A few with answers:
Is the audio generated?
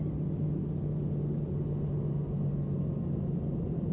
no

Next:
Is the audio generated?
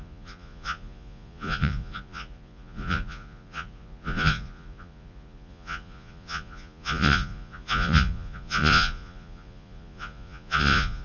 yes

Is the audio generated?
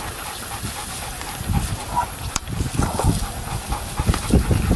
no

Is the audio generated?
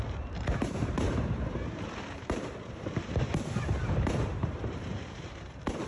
yes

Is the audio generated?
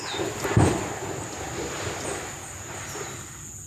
no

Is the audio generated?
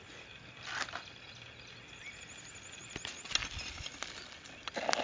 no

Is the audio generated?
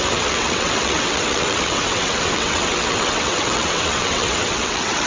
yes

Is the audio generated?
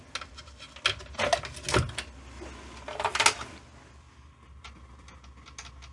no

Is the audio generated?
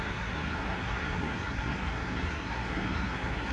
yes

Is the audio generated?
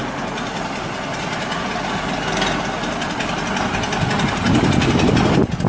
no